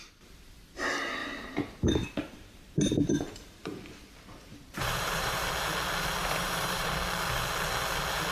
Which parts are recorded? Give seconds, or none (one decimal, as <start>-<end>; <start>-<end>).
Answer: 0.0-1.2; 5.5-6.2; 6.9-8.3